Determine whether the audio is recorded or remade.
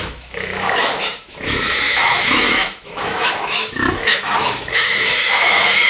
remade